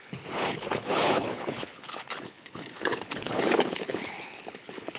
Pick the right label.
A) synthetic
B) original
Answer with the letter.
A